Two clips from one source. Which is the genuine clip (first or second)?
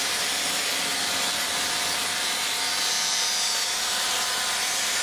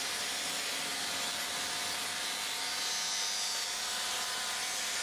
second